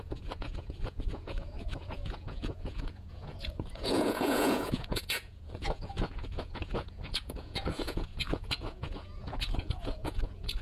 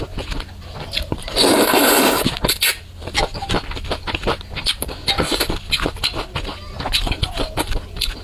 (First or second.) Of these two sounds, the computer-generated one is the first